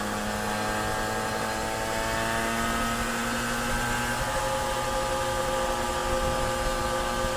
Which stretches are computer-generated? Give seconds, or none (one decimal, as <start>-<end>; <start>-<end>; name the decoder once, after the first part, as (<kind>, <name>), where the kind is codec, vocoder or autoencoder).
none